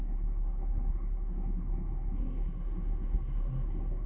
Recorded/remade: remade